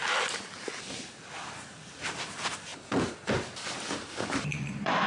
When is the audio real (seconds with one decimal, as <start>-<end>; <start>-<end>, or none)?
0.0-4.5